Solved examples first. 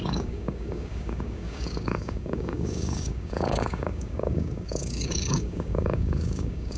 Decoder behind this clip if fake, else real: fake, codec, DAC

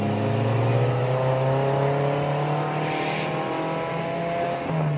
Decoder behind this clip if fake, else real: real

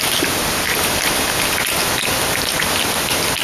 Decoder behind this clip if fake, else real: real